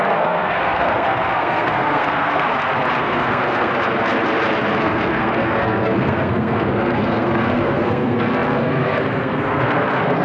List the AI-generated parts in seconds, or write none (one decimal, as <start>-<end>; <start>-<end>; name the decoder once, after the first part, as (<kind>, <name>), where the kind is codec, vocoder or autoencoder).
0.0-2.5 (codec, SNAC); 3.0-3.7; 4.7-10.2